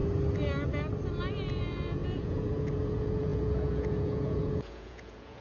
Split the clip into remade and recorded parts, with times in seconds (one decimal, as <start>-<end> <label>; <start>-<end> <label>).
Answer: 0.0-1.3 recorded; 1.3-5.4 remade